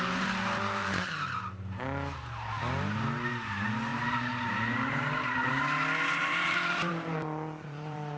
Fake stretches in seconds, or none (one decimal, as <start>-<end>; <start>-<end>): 0.8-1.4; 3.9-5.5; 6.2-8.2